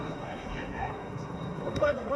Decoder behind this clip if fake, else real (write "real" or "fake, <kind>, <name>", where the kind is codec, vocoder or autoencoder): fake, codec, SNAC